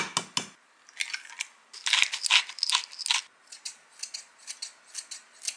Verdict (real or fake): real